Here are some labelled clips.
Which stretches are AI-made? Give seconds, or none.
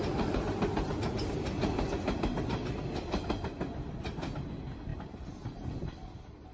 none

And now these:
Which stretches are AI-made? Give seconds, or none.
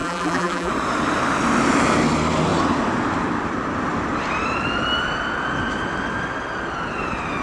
0.0-0.7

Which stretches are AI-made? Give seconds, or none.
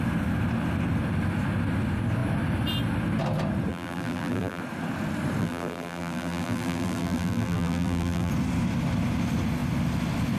3.7-4.6; 5.4-8.3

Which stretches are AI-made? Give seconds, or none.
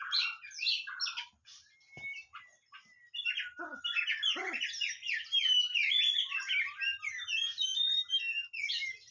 none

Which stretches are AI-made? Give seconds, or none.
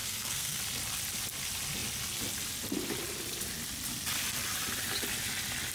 0.0-0.6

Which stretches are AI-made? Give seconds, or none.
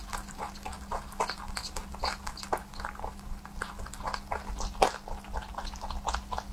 none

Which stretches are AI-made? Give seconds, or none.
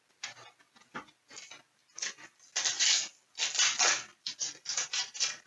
4.7-5.5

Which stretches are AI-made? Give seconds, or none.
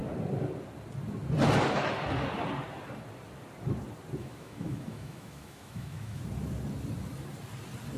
4.2-6.2